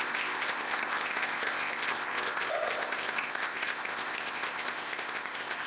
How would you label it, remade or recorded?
remade